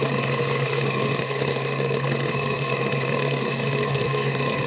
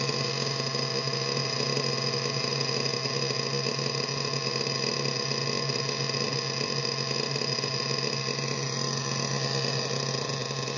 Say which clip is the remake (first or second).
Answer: first